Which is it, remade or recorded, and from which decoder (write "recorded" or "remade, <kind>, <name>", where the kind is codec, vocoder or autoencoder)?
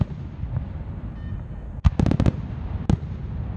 recorded